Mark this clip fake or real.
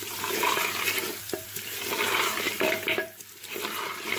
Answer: fake